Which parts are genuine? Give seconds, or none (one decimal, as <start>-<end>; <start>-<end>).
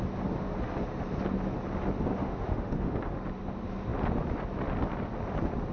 0.0-2.1; 2.9-5.7